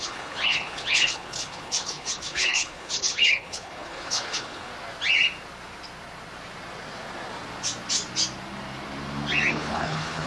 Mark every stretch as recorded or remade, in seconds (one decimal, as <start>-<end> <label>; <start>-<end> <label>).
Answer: 0.0-4.7 remade; 4.7-9.5 recorded; 9.5-10.3 remade